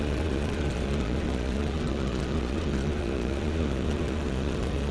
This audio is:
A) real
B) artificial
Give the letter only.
B